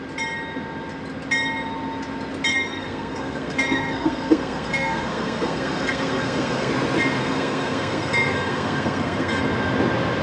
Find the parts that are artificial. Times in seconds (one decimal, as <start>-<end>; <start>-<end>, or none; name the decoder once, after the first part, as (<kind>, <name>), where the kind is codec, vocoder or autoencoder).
2.5-6.7 (codec, SNAC); 7.2-9.4

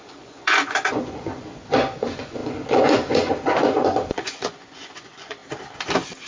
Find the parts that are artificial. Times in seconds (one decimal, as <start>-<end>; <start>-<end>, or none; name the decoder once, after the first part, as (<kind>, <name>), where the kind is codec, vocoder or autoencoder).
0.0-5.4 (vocoder, Vocos)